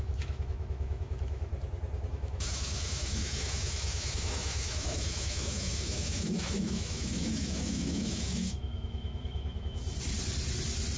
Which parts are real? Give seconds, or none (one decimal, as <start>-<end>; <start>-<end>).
1.5-2.1; 9.8-11.0